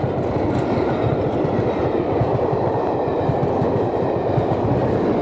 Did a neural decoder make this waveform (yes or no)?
no